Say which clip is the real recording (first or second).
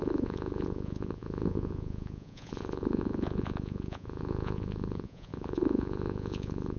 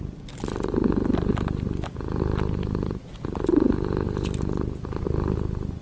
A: second